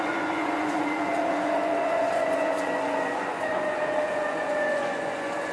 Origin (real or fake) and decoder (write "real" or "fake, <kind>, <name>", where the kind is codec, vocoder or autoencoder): fake, vocoder, Vocos